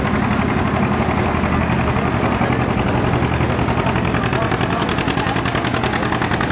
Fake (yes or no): no